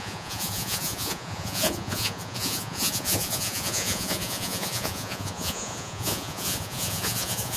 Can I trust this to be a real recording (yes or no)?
no